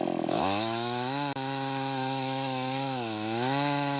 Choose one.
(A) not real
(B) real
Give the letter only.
A